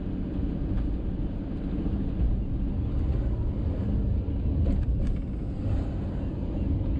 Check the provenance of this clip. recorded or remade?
recorded